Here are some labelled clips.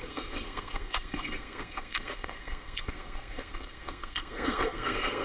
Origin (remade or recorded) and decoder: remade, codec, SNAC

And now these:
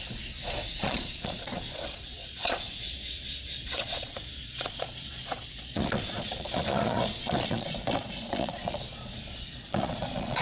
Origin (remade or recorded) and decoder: remade, vocoder, Vocos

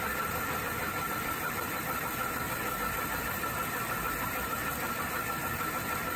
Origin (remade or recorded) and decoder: recorded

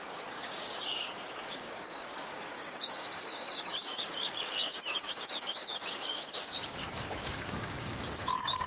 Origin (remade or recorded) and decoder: remade, codec, DAC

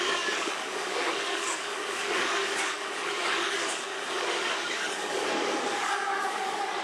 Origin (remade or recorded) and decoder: remade, codec, DAC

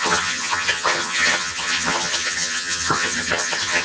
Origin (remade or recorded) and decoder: remade, vocoder, HiFi-GAN